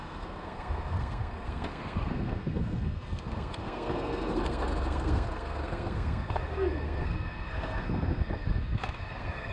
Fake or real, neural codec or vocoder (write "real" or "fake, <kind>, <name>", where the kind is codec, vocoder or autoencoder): fake, codec, SNAC